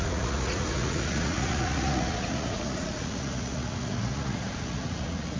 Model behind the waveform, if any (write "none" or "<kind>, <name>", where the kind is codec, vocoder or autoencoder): vocoder, Vocos